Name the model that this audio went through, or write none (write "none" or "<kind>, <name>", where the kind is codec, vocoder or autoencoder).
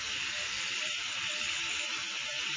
vocoder, BigVGAN v2